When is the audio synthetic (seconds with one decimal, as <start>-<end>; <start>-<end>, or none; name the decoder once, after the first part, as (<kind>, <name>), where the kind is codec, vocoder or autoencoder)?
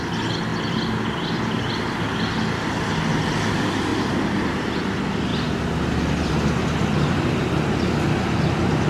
3.9-4.6 (vocoder, BigVGAN v2)